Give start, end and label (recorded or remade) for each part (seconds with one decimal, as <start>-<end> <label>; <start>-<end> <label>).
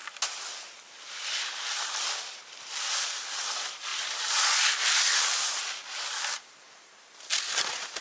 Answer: 0.0-8.0 recorded